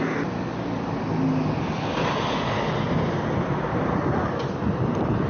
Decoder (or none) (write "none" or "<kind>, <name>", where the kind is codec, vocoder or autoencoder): none